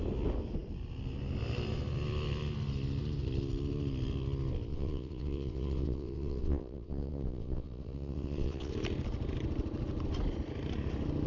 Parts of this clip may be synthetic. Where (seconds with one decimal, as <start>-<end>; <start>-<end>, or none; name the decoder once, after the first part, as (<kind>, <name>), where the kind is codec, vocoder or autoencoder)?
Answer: 4.7-8.7 (vocoder, WaveNeXt)